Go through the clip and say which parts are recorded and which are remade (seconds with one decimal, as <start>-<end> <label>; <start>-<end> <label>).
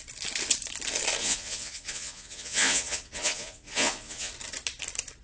0.0-1.2 recorded; 1.2-4.3 remade; 4.3-5.2 recorded